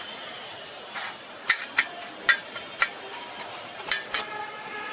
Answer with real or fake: fake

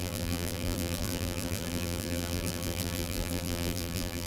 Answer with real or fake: fake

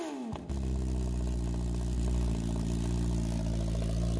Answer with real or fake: real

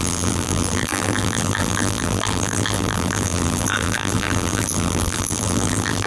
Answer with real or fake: fake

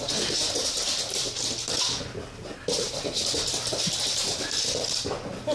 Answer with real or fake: real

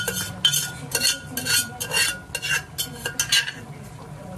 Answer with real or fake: real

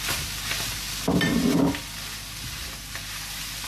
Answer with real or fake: real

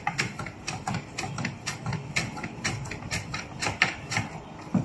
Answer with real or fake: fake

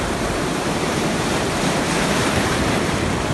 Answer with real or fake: fake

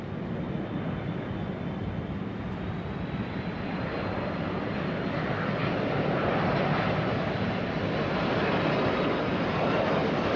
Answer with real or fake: real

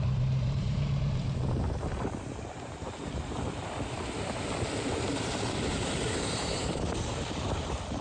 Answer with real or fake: fake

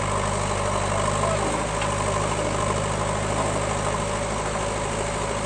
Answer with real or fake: real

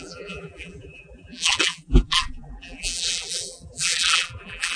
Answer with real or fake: fake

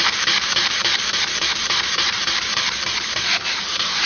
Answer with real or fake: fake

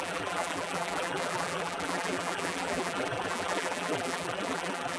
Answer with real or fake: fake